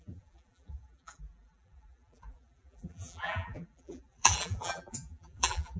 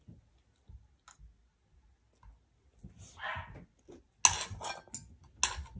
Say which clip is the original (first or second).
second